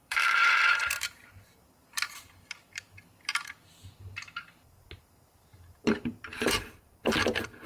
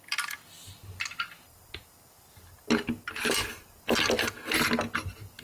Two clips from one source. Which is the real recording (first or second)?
second